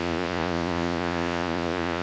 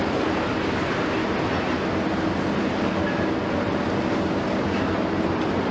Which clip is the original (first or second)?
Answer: second